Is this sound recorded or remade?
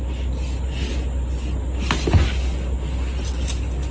recorded